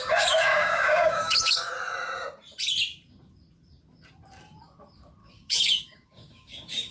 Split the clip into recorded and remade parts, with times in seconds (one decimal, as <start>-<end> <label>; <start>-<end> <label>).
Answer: 0.0-1.7 remade; 1.7-5.2 recorded; 5.2-6.9 remade